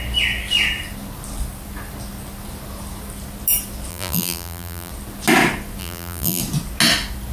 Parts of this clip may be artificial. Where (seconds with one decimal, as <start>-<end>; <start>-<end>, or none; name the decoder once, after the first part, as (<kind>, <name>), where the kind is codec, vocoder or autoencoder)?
3.9-4.9 (vocoder, BigVGAN v2); 5.8-6.4